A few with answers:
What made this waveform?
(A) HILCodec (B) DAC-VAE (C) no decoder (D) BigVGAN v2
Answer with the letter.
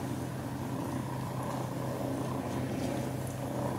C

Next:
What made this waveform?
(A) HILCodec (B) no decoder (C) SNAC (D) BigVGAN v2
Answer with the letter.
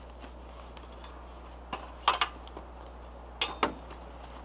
B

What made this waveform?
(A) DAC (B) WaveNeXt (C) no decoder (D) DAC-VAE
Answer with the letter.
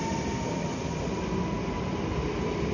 C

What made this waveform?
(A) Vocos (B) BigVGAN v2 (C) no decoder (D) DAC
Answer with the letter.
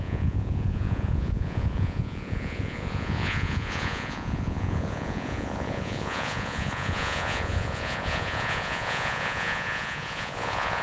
A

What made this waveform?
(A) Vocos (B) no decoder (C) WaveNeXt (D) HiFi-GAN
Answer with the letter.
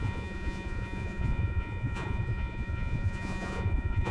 A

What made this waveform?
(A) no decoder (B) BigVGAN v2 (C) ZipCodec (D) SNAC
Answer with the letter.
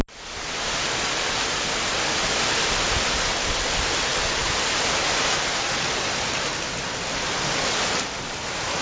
A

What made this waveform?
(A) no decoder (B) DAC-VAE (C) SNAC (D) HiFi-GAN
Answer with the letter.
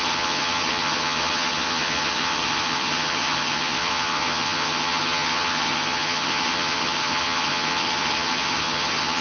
D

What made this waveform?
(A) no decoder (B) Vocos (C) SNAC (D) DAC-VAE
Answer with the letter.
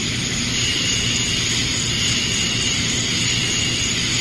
A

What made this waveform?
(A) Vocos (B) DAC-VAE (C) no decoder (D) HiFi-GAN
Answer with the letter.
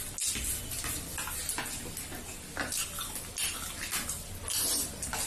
C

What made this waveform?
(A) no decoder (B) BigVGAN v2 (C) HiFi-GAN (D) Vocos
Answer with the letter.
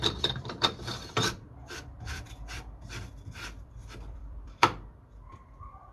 B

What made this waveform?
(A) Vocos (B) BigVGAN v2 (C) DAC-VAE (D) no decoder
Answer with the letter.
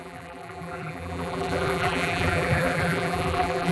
B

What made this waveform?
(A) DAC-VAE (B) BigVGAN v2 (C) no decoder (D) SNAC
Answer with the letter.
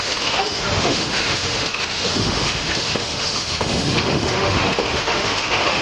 A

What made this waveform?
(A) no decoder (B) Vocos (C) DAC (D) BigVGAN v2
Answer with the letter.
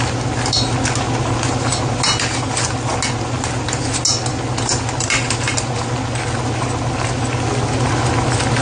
A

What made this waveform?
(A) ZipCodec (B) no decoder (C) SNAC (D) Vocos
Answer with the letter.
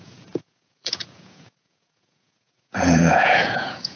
D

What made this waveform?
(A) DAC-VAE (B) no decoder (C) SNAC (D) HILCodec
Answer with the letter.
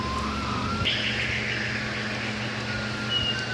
B